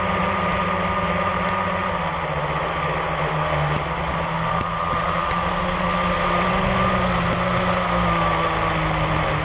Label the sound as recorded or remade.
recorded